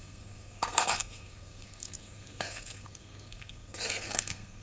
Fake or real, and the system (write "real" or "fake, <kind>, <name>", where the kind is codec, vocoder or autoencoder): fake, codec, SNAC